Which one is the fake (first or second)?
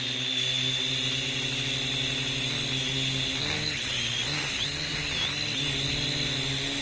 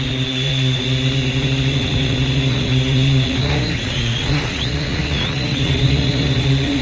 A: second